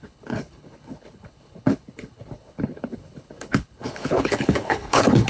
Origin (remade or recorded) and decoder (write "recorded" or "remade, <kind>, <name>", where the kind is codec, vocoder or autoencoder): remade, codec, HILCodec